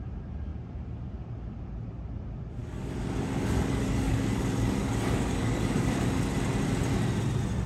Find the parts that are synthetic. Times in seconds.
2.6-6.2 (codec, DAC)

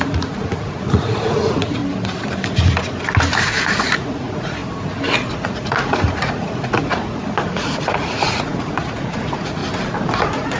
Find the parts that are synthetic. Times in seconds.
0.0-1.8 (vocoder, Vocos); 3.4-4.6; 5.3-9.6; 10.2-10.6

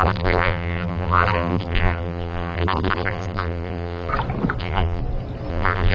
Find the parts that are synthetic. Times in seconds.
0.0-4.1 (vocoder, BigVGAN v2); 4.6-5.0; 5.5-5.9

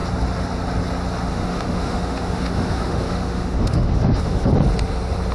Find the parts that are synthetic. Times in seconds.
1.3-4.5 (autoencoder, DAC-VAE)